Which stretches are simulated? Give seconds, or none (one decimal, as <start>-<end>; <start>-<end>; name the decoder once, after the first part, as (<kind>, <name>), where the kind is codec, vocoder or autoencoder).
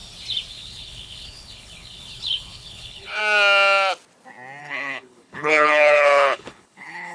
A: 0.5-3.2 (codec, HILCodec); 4.6-7.1